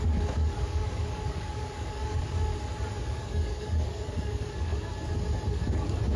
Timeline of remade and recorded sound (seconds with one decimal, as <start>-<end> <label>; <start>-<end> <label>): 0.0-2.5 remade; 2.5-3.0 recorded; 3.0-4.7 remade; 4.7-5.5 recorded; 5.5-6.2 remade